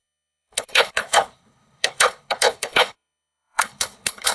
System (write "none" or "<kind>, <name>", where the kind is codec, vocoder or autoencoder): codec, HILCodec